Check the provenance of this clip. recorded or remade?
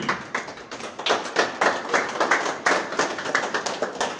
recorded